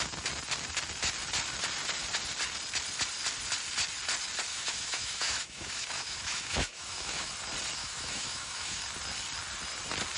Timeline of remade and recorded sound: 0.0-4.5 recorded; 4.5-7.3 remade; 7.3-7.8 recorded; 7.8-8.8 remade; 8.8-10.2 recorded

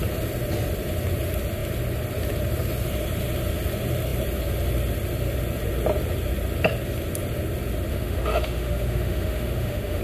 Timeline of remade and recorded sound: 0.0-7.9 recorded; 7.9-10.0 remade

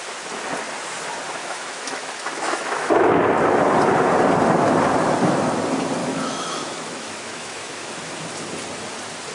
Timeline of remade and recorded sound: 0.0-1.4 recorded; 1.4-3.1 remade; 3.1-6.0 recorded; 6.0-7.9 remade; 7.9-9.3 recorded

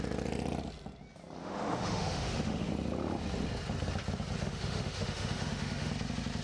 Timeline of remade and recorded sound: 0.0-1.4 recorded; 1.4-2.7 remade; 2.7-4.4 recorded; 4.4-5.9 remade; 5.9-6.4 recorded

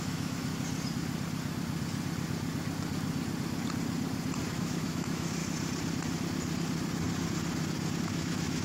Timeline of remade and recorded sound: 0.0-0.5 remade; 0.5-4.5 recorded; 4.5-5.4 remade; 5.4-8.0 recorded; 8.0-8.6 remade

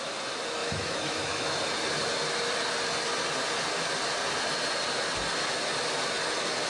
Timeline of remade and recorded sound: 0.0-0.6 recorded; 0.6-1.6 remade; 1.6-6.7 recorded

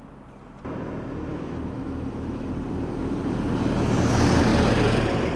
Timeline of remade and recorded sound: 0.0-1.3 recorded; 1.3-2.5 remade; 2.5-5.4 recorded